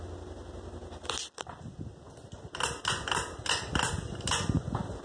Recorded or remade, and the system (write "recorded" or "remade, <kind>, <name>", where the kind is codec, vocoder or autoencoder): recorded